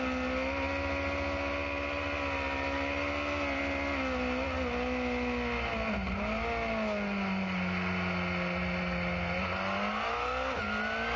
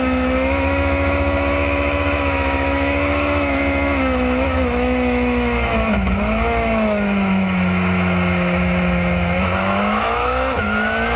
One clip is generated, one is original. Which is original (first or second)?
first